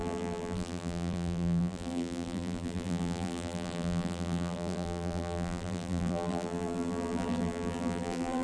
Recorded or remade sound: remade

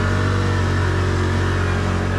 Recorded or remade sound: recorded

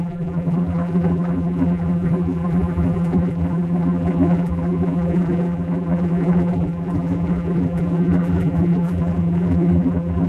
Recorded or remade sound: remade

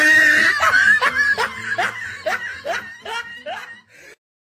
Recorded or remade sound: recorded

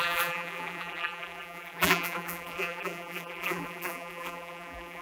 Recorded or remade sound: remade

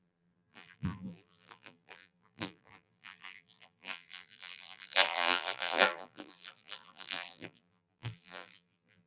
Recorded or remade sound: remade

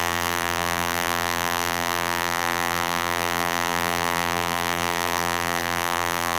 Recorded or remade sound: remade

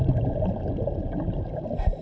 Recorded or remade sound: recorded